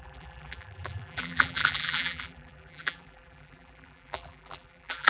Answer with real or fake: fake